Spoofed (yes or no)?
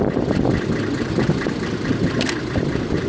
no